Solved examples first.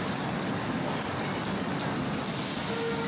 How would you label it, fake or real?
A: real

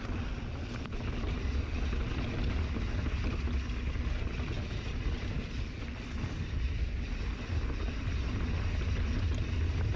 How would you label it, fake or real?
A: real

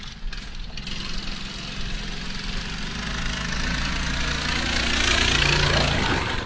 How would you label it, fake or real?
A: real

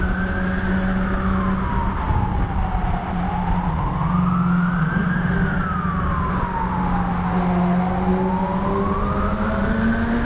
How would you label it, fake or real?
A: real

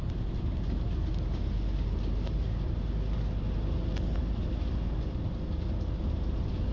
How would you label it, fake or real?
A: real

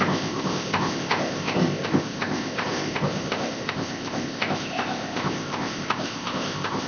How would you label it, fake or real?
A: fake